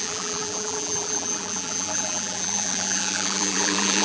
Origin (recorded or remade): remade